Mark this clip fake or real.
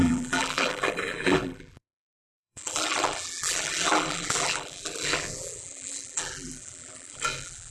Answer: fake